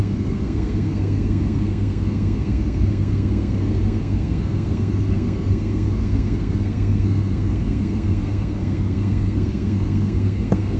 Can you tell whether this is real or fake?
fake